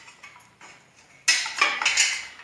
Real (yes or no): yes